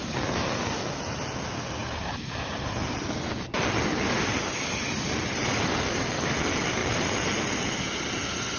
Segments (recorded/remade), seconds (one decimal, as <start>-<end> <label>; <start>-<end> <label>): 0.0-8.6 recorded